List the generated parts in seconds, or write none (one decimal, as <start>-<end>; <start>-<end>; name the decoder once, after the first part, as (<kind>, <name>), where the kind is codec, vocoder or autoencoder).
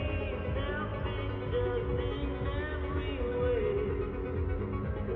none